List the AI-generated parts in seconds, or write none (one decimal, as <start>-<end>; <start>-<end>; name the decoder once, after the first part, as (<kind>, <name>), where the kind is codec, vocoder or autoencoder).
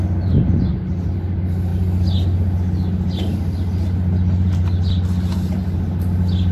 none